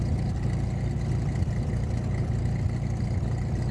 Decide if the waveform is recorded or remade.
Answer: recorded